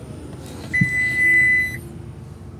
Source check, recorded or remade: recorded